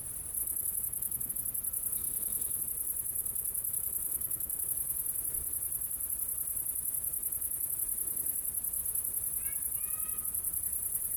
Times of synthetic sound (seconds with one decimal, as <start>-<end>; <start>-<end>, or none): 0.4-1.3; 2.0-2.6; 3.2-4.7

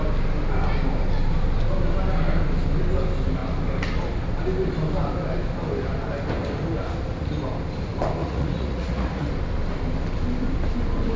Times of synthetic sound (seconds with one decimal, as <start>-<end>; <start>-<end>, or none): 8.2-9.3

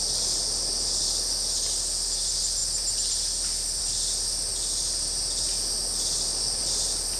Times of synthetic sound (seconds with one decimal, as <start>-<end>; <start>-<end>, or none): none